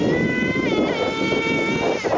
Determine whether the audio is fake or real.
real